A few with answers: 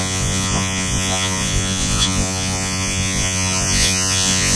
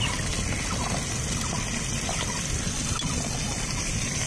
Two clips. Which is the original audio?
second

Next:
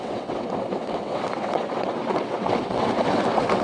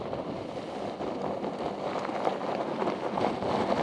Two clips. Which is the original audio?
second